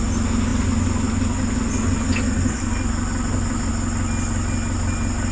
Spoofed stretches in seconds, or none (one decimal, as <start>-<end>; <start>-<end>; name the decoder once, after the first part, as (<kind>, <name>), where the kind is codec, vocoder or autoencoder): none